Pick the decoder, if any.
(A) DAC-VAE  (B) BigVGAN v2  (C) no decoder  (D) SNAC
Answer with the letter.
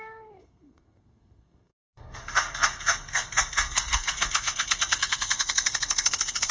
D